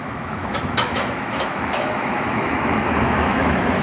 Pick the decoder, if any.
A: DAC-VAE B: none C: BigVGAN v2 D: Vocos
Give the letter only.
A